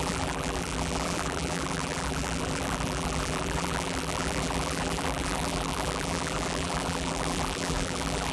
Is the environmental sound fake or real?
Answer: fake